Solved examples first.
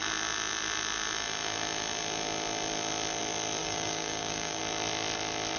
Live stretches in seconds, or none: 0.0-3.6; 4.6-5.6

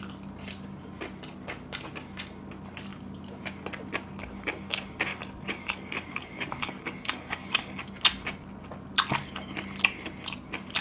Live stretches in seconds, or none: 0.0-5.1; 7.8-10.8